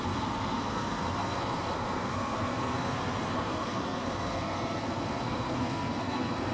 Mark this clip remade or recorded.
remade